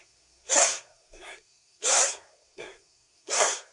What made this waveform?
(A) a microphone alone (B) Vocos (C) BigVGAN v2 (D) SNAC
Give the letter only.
D